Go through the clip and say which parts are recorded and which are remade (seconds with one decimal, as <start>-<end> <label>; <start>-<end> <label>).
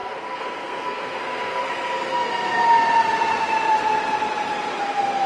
0.0-1.6 remade; 1.6-4.8 recorded; 4.8-5.3 remade